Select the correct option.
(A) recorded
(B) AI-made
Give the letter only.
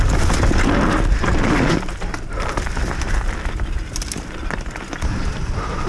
A